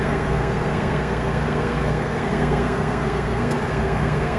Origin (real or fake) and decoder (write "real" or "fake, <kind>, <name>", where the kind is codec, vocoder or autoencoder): fake, codec, SNAC